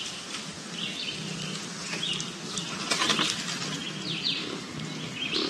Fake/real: real